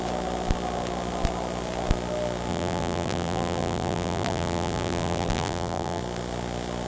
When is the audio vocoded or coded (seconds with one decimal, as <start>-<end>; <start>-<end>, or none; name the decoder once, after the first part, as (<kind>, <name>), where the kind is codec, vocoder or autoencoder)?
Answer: 2.5-6.0 (vocoder, BigVGAN v2)